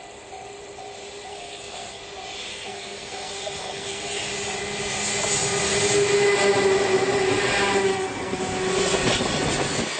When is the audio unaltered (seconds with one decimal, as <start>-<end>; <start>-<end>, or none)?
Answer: 0.0-1.3; 2.0-2.5; 4.3-7.9; 8.4-10.0